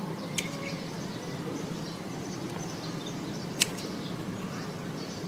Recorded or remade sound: remade